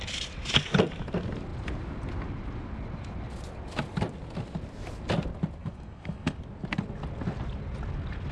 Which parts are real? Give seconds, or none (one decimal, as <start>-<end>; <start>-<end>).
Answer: 0.0-5.6; 6.4-8.3